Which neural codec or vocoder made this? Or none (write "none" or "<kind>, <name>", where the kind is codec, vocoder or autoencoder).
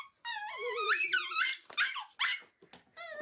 none